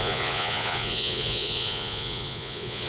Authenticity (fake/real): fake